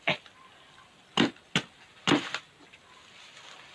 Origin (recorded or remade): recorded